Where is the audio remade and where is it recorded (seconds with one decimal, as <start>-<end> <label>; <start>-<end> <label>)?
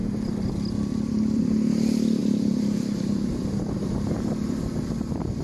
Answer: 0.0-1.4 remade; 1.4-2.2 recorded; 2.2-5.4 remade